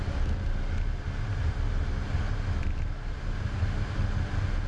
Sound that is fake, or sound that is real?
real